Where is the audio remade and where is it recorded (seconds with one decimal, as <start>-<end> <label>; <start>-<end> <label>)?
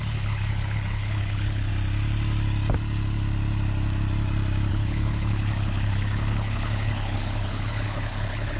0.0-1.7 remade; 1.7-4.7 recorded; 4.7-8.6 remade